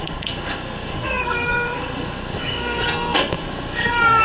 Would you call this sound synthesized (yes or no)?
yes